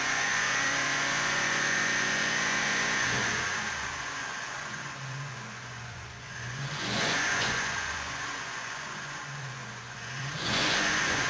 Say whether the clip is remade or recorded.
remade